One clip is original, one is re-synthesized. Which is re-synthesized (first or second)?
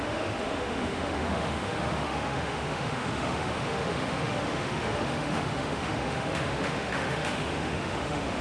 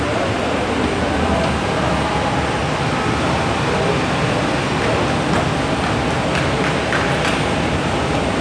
first